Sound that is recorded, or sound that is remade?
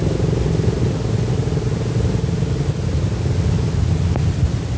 recorded